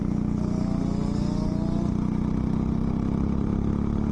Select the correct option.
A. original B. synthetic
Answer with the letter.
A